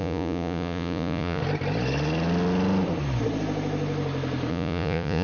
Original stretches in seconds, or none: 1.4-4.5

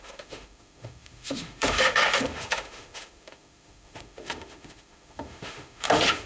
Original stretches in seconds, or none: none

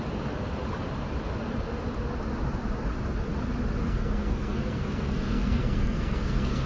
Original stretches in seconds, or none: 0.0-3.8

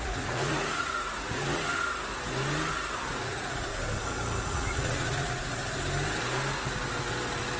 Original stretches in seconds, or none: 1.7-3.1; 3.7-4.5; 5.6-7.6

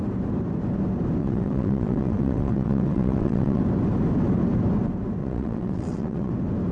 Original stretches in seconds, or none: 0.0-1.2; 3.6-5.2; 6.3-6.7

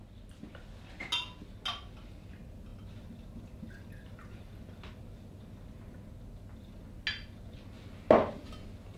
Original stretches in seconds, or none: 0.0-9.0

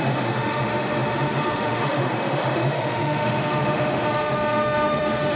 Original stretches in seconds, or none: none